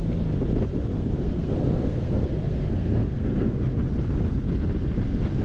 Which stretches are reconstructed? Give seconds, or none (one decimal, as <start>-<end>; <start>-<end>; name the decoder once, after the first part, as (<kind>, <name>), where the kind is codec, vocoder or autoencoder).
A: 0.9-3.8 (codec, SNAC)